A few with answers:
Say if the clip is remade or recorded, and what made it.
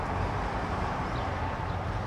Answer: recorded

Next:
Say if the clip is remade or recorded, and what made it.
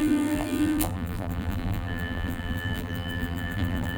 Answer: remade, vocoder, BigVGAN v2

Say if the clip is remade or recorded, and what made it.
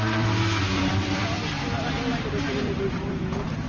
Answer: remade, vocoder, BigVGAN v2